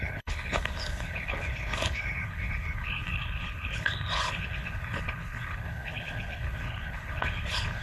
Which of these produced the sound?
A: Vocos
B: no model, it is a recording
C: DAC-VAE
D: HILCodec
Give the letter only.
D